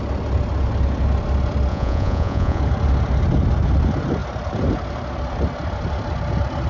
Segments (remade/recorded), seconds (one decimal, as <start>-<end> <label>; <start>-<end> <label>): 0.0-1.7 recorded; 1.7-2.6 remade; 2.6-6.7 recorded

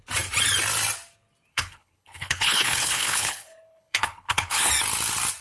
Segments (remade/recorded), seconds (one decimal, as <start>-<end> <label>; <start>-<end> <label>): 0.0-1.5 recorded; 1.5-4.7 remade; 4.7-5.4 recorded